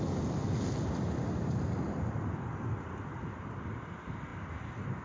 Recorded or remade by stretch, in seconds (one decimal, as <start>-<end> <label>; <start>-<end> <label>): 0.0-5.0 recorded